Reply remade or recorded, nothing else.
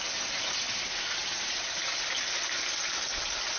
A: recorded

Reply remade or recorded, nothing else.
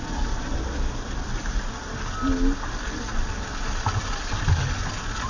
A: recorded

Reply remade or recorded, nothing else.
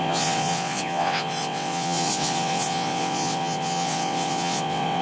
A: remade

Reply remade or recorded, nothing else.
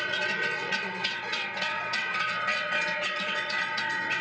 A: remade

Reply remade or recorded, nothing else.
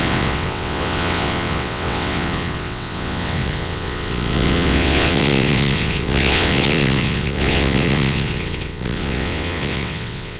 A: remade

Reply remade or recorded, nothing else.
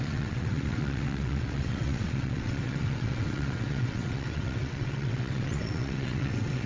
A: remade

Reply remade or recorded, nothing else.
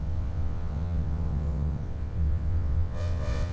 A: remade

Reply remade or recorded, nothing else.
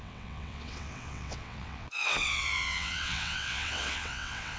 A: remade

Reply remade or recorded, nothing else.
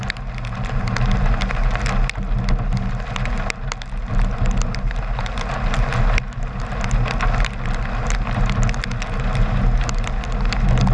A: recorded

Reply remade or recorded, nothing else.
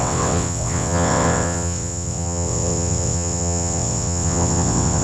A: remade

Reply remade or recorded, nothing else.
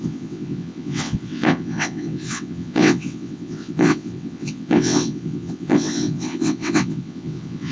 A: remade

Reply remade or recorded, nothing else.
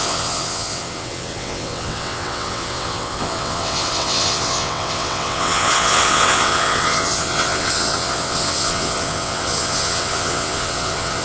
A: remade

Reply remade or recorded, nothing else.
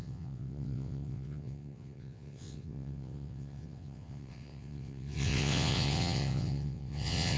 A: remade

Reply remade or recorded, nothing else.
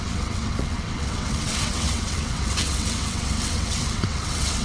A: remade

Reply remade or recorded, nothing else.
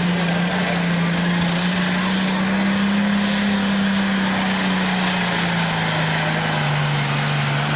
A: recorded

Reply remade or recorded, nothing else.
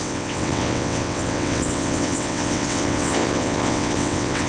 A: remade